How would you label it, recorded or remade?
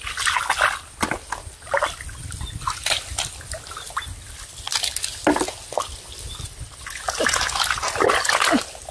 recorded